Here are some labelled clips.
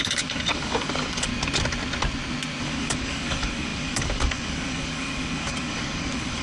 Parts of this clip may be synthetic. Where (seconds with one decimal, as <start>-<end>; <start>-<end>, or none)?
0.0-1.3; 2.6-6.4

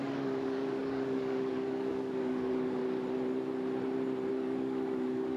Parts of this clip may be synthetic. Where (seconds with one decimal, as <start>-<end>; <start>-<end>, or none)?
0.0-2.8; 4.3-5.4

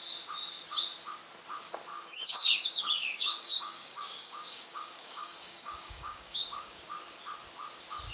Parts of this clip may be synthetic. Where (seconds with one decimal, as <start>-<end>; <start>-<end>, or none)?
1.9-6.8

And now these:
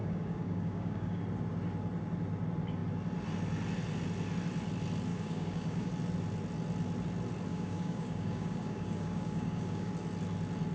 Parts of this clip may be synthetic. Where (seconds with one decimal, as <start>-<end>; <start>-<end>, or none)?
0.0-1.2; 5.1-5.9; 7.5-9.9